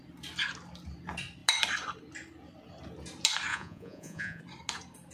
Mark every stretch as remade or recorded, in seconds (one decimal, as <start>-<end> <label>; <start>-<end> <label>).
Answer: 0.0-3.5 recorded; 3.5-4.4 remade; 4.4-5.1 recorded